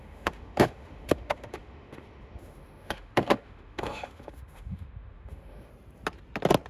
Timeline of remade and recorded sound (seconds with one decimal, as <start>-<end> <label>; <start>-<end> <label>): 0.0-5.7 remade; 5.7-6.7 recorded